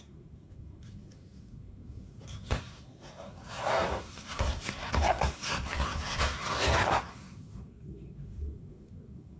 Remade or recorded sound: remade